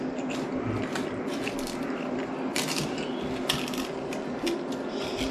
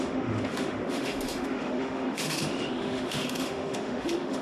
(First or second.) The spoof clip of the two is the second